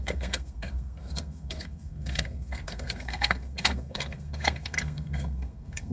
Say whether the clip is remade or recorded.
remade